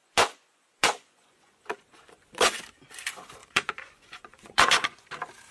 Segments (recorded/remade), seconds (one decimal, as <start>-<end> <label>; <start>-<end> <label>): 0.0-2.6 remade; 2.6-3.4 recorded; 3.4-5.1 remade; 5.1-5.5 recorded